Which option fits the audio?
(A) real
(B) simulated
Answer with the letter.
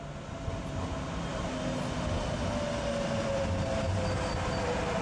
A